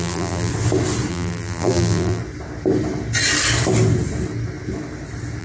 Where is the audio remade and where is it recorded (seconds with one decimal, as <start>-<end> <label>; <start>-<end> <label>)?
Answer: 0.0-0.5 remade; 0.5-1.1 recorded; 1.1-2.2 remade; 2.2-5.4 recorded